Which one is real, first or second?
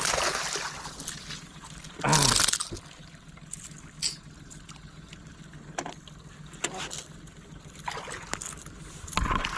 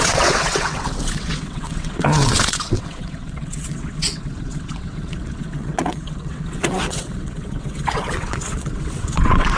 first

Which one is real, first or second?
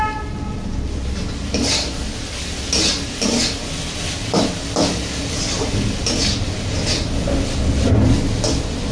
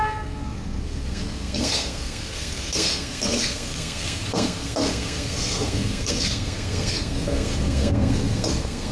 first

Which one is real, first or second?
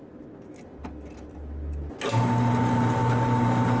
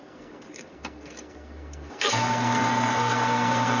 first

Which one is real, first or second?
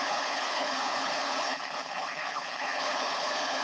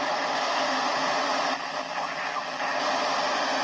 second